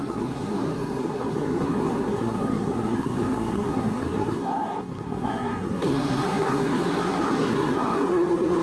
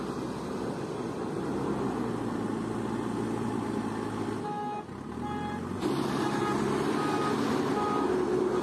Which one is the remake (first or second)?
first